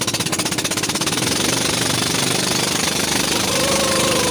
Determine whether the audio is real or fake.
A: fake